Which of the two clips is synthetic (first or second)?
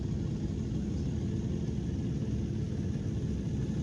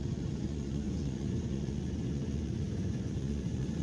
second